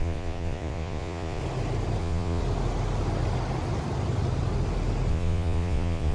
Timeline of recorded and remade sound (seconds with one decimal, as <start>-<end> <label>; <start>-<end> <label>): 0.0-1.4 remade; 1.4-2.0 recorded; 2.0-2.4 remade; 2.4-5.1 recorded; 5.1-6.1 remade